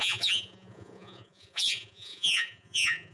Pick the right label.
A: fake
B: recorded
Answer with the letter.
A